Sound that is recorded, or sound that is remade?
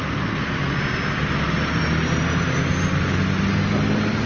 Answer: recorded